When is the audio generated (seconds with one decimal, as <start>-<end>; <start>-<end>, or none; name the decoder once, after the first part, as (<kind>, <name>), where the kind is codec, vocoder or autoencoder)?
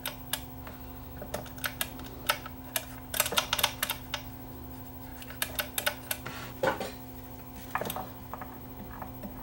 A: none